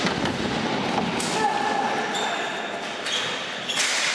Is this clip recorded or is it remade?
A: recorded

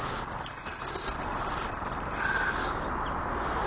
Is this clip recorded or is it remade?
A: recorded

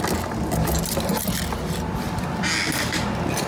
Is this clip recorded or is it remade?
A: recorded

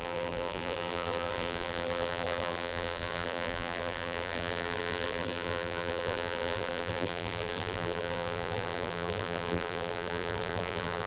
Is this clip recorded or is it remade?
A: remade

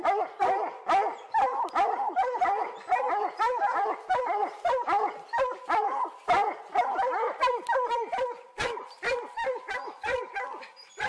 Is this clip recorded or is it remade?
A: recorded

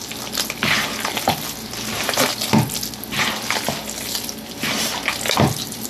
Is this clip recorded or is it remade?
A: recorded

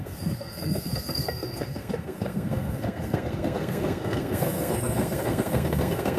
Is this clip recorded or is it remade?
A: remade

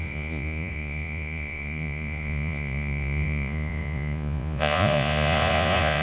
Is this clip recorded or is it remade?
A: remade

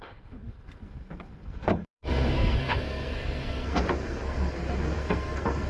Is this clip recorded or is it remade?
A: remade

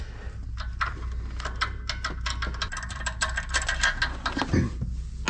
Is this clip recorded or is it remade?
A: recorded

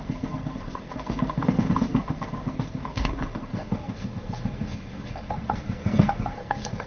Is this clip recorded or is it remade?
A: remade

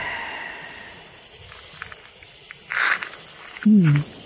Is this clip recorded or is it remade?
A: recorded